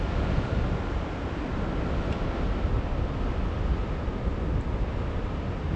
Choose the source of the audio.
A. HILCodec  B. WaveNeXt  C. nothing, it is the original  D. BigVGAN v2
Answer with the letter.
C